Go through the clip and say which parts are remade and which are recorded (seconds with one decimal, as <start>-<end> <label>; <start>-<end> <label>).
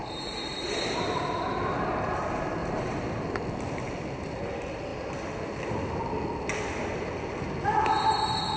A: 0.0-1.6 remade; 1.6-2.6 recorded; 2.6-3.2 remade; 3.2-8.6 recorded